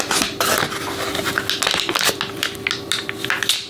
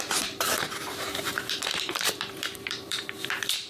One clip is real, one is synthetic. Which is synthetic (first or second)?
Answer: second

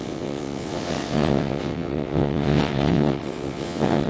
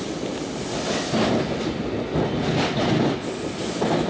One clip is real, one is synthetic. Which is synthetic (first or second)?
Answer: first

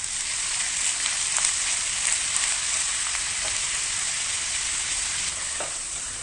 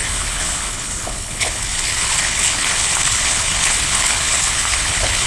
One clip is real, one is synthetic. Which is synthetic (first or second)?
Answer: second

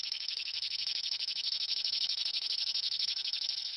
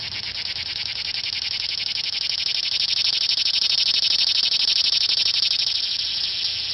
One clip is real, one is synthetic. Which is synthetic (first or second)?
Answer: first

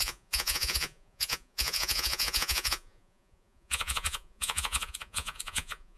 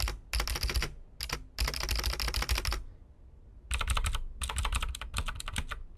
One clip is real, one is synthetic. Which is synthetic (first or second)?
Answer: first